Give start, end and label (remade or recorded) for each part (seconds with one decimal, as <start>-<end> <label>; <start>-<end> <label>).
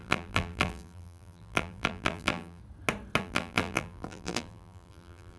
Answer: 0.0-2.6 remade; 2.6-3.2 recorded; 3.2-5.4 remade